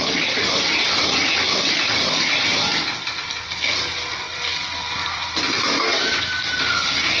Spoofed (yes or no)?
no